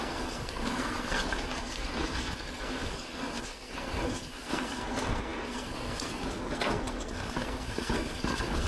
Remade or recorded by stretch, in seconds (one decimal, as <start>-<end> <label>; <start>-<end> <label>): 0.0-8.7 remade